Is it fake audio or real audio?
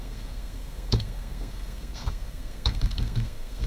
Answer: fake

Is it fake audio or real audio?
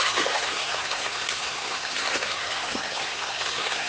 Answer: fake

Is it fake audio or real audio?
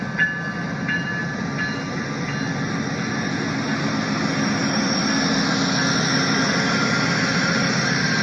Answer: real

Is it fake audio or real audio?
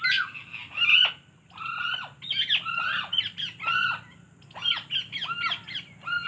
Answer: real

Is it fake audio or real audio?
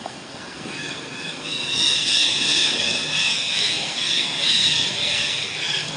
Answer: fake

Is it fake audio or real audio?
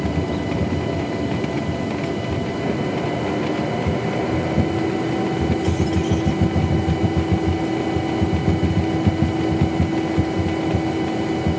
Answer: real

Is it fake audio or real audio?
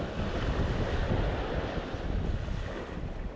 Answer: real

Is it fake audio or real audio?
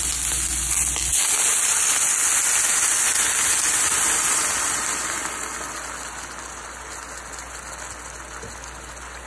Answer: real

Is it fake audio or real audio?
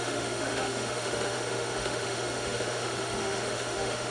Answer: fake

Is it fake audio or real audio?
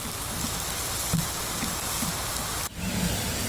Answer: real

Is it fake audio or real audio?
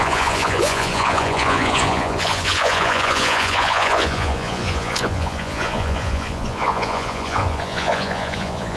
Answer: fake